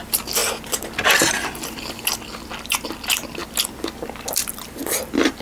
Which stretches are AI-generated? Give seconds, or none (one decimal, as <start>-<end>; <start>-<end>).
0.0-0.4; 2.6-5.4